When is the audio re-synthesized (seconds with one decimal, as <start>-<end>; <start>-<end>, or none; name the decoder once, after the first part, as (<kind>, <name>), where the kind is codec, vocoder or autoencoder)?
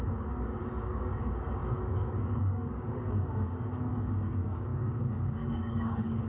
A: 0.0-6.3 (codec, DAC)